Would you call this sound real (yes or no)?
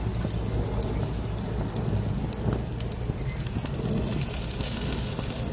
yes